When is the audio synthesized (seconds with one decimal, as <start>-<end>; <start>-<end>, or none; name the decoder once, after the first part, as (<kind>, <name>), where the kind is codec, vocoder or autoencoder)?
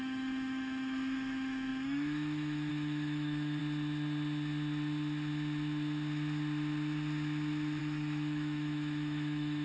0.0-3.6 (autoencoder, DAC-VAE); 7.8-9.6